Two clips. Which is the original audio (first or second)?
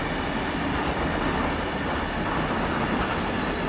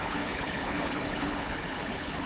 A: first